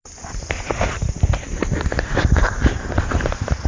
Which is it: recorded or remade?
recorded